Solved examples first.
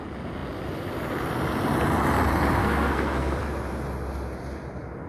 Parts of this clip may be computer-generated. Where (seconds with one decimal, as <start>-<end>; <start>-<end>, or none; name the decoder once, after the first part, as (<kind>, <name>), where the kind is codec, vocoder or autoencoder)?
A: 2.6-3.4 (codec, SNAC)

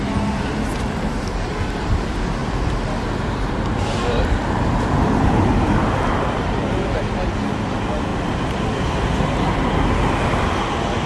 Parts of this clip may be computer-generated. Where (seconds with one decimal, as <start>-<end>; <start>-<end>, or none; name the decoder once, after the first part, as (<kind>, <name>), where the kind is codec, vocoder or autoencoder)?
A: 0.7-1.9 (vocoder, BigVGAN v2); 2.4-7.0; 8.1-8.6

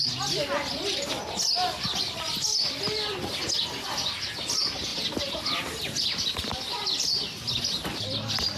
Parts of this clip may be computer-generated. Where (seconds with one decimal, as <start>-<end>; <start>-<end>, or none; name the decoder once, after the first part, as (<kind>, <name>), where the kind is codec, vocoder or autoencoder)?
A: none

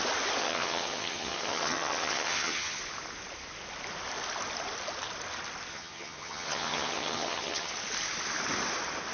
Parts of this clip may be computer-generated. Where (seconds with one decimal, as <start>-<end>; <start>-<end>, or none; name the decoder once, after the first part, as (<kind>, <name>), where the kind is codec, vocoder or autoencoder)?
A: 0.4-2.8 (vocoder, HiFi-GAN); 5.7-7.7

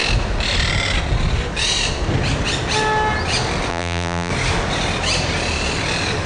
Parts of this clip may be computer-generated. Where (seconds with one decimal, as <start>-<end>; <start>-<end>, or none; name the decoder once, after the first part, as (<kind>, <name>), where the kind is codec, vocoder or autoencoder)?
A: 3.7-4.3 (vocoder, BigVGAN v2)